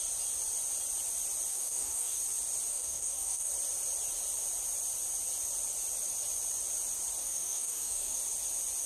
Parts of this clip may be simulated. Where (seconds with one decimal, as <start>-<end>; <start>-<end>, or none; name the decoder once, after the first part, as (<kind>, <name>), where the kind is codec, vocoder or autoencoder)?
1.5-2.2 (codec, DAC); 2.7-3.5; 7.2-8.2